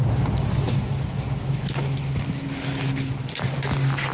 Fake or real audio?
real